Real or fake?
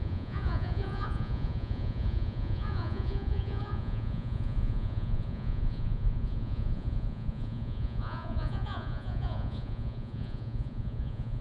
fake